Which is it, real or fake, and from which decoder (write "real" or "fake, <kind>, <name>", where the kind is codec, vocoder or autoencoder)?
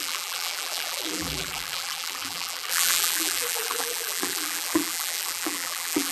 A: fake, vocoder, BigVGAN v2